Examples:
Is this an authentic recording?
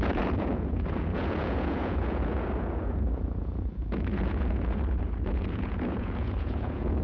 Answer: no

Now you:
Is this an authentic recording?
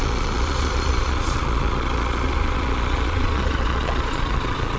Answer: no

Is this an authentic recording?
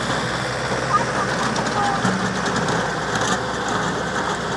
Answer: yes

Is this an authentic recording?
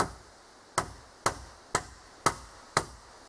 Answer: yes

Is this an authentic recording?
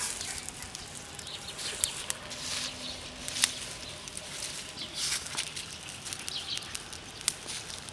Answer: yes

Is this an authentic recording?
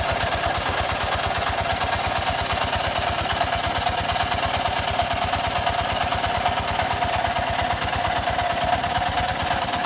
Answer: yes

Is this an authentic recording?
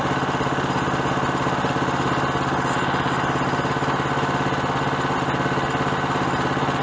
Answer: yes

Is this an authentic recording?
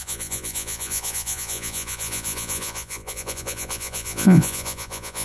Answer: no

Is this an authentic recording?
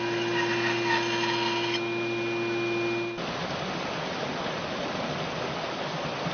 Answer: yes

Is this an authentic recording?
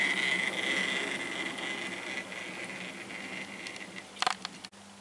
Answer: yes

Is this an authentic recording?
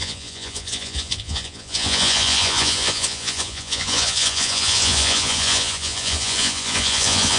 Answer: no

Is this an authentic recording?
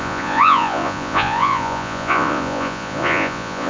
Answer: no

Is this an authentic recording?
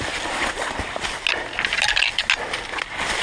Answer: yes